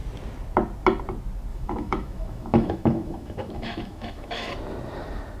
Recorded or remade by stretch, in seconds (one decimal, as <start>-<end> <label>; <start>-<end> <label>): 0.0-1.5 recorded; 1.5-4.5 remade; 4.5-5.4 recorded